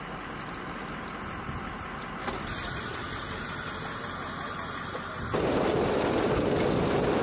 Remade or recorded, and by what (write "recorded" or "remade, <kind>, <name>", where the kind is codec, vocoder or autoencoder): recorded